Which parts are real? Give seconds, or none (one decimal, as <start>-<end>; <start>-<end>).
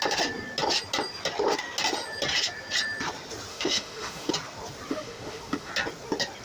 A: 0.0-3.5; 4.3-4.9; 5.7-6.4